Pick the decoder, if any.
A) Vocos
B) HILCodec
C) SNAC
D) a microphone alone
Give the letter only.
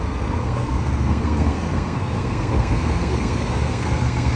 C